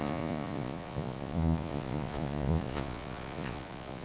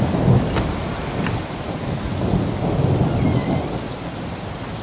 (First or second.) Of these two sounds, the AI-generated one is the first